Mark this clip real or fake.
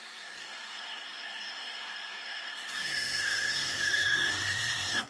fake